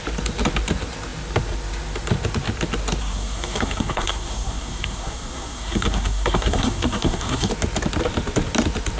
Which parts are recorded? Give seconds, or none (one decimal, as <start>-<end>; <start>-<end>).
0.0-3.0; 7.5-9.0